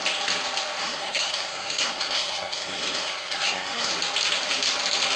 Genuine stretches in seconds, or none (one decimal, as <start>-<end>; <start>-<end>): 0.0-0.8; 3.9-5.2